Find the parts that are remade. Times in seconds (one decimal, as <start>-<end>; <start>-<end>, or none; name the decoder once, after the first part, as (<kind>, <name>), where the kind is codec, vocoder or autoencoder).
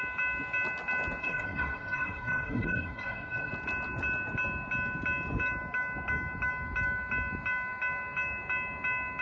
1.2-3.5 (codec, SNAC)